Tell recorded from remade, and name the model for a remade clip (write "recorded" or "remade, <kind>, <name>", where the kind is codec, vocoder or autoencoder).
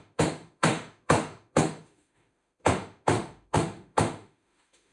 remade, autoencoder, DAC-VAE